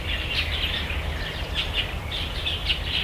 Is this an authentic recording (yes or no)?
yes